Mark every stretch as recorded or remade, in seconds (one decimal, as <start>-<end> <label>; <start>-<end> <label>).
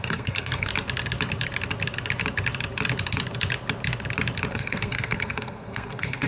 0.0-0.7 remade; 0.7-4.5 recorded; 4.5-6.3 remade